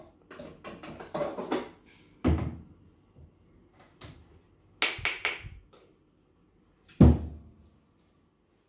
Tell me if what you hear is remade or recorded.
recorded